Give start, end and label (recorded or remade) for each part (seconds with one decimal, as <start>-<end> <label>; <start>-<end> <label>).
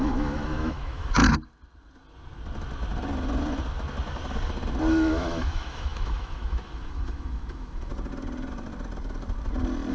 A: 0.0-1.2 remade; 1.2-4.9 recorded; 4.9-7.9 remade; 7.9-9.9 recorded